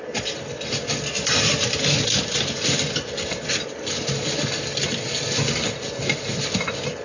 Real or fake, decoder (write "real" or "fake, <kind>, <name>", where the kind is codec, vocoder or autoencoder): real